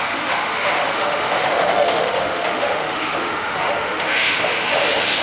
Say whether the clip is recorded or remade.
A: remade